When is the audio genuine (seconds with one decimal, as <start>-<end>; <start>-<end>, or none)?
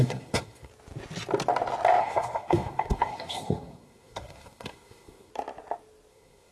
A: 0.7-2.0; 5.3-6.1